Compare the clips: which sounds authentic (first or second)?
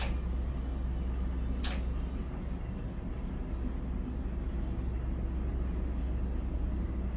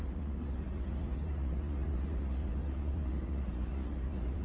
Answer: first